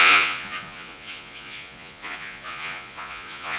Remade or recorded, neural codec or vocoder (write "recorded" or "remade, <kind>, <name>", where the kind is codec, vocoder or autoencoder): remade, vocoder, Vocos